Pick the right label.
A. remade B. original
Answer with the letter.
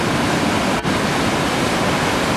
B